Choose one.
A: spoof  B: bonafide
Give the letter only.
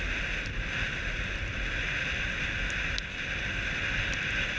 B